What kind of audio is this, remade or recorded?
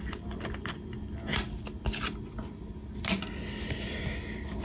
recorded